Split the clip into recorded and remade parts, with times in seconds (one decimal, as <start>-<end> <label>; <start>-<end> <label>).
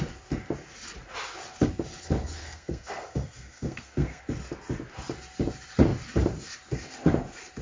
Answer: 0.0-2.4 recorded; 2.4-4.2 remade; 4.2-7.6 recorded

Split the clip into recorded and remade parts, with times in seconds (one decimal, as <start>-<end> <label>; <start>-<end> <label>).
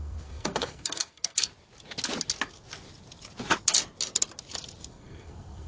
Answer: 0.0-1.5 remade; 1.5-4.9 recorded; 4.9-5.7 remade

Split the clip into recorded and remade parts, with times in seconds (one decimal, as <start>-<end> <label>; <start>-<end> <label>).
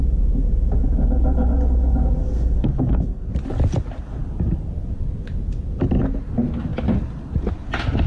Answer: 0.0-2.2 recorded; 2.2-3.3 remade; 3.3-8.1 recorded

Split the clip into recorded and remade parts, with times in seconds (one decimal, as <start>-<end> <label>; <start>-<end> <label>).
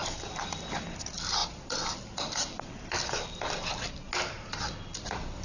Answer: 0.0-5.4 recorded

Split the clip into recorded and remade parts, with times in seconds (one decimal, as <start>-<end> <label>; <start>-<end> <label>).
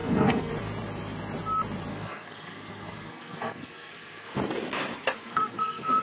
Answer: 0.0-0.5 remade; 0.5-1.9 recorded; 1.9-4.4 remade; 4.4-5.2 recorded; 5.2-6.0 remade